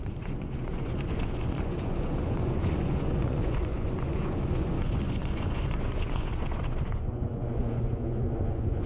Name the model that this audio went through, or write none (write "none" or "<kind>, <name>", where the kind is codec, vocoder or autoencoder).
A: vocoder, Vocos